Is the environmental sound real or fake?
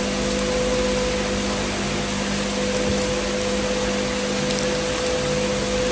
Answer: real